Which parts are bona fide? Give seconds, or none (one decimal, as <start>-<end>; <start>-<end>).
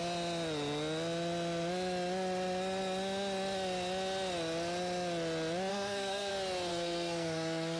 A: 0.0-5.7; 6.3-6.7